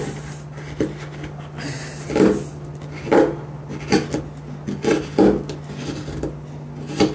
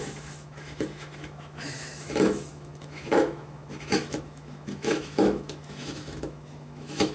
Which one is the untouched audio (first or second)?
first